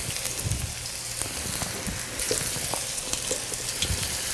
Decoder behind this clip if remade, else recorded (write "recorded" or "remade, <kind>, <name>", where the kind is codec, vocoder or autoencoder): recorded